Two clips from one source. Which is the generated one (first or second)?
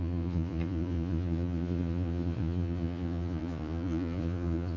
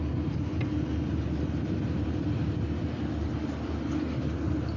first